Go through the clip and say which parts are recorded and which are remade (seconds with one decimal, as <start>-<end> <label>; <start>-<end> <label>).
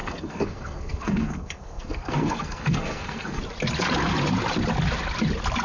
0.0-3.4 remade; 3.4-5.6 recorded